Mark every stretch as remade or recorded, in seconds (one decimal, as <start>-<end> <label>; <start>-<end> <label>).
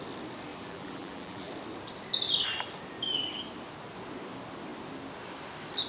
0.0-0.5 recorded; 0.5-1.5 remade; 1.5-5.9 recorded